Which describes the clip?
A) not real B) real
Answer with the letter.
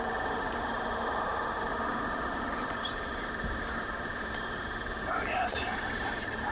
B